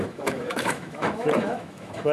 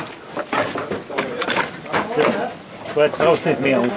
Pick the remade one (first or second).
first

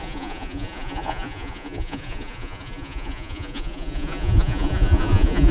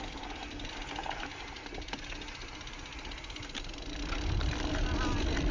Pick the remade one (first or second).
first